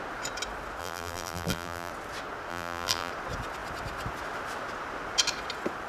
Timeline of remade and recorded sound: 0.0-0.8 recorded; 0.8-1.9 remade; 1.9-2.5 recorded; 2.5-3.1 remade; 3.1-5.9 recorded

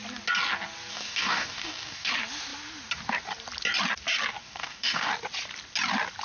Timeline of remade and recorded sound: 0.0-0.9 recorded; 0.9-2.1 remade; 2.1-4.4 recorded; 4.4-5.1 remade; 5.1-6.2 recorded

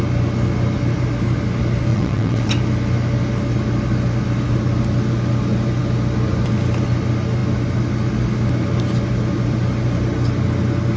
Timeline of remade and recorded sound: 0.0-1.9 recorded; 1.9-2.5 remade; 2.5-11.0 recorded

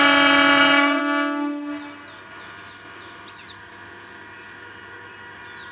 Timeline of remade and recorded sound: 0.0-1.0 remade; 1.0-5.7 recorded

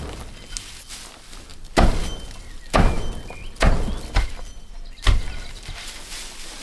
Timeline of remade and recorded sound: 0.0-6.6 recorded

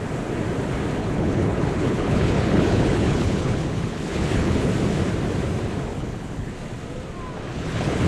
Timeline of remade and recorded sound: 0.0-1.0 recorded; 1.0-4.7 remade; 4.7-5.9 recorded; 5.9-6.5 remade; 6.5-7.5 recorded; 7.5-8.1 remade

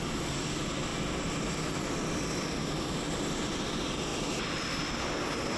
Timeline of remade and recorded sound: 0.0-5.6 recorded

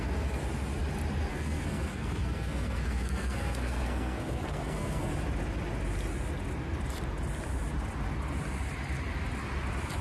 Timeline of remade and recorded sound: 0.0-0.4 remade; 0.4-1.3 recorded; 1.3-5.1 remade; 5.1-10.0 recorded